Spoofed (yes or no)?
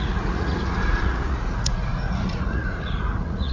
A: yes